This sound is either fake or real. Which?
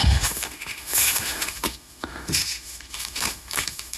fake